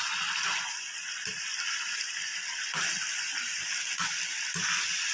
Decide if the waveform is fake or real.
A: real